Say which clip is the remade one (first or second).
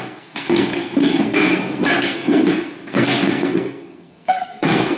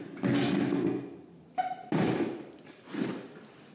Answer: first